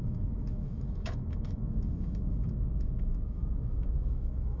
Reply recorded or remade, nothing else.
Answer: remade